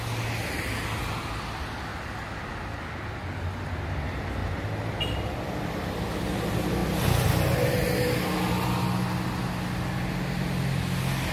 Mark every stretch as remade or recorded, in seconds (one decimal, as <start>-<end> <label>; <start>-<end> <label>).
0.0-4.4 recorded; 4.4-5.5 remade; 5.5-11.3 recorded